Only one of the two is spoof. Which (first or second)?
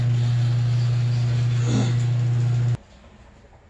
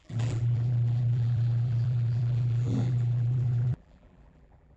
second